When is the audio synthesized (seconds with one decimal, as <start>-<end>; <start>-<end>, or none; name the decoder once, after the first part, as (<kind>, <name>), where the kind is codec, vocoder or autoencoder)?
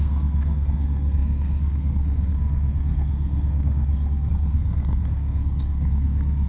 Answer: 0.0-6.5 (codec, SNAC)